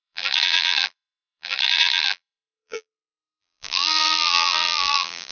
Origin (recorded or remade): remade